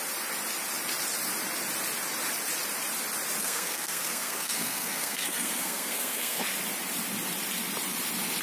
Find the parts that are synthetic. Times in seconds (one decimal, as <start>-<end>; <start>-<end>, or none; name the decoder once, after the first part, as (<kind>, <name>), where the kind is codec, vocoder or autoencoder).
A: 3.4-6.4 (codec, SNAC)